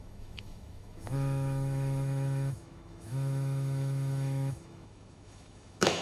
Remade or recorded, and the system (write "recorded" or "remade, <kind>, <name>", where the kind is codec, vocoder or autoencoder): remade, autoencoder, DAC-VAE